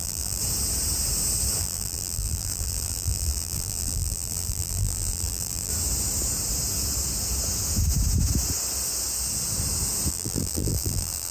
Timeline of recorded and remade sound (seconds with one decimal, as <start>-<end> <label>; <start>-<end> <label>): 0.0-0.4 remade; 0.4-1.6 recorded; 1.6-5.7 remade; 5.7-10.1 recorded; 10.1-11.3 remade